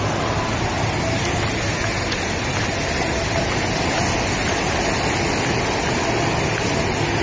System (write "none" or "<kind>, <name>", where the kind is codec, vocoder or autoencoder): none